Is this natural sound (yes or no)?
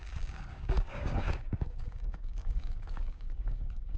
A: no